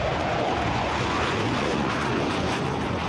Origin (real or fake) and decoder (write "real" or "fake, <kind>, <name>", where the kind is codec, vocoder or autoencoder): fake, vocoder, Vocos